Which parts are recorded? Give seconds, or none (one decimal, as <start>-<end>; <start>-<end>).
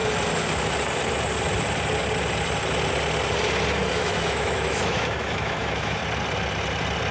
0.0-4.0; 6.0-7.1